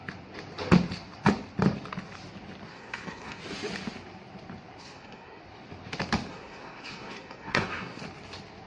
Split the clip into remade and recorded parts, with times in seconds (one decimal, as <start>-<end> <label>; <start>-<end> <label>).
0.0-2.7 recorded; 2.7-3.4 remade; 3.4-4.8 recorded; 4.8-5.4 remade; 5.4-6.3 recorded; 6.3-8.0 remade; 8.0-8.7 recorded